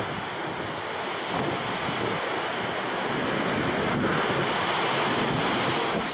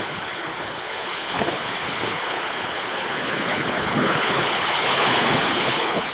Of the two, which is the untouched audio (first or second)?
first